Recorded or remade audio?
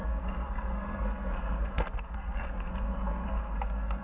remade